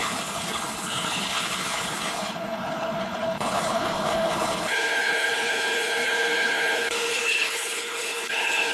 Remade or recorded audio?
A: remade